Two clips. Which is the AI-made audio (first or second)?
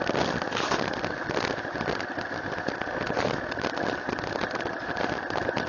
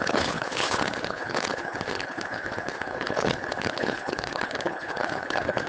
second